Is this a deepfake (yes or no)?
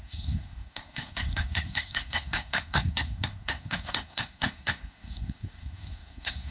yes